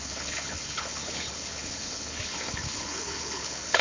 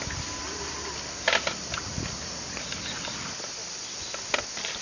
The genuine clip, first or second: second